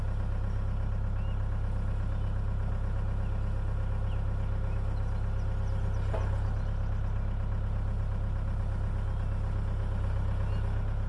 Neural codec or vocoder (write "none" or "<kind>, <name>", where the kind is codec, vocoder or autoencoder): none